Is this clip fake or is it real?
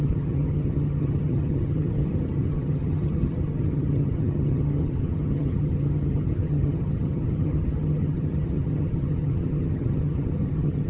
fake